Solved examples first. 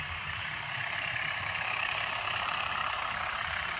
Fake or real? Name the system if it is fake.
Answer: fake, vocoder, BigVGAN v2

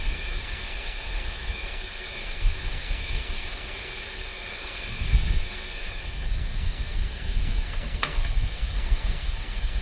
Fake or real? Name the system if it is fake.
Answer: fake, codec, SNAC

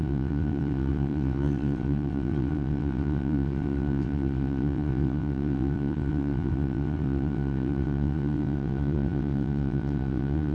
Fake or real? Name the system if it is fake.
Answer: fake, vocoder, WaveNeXt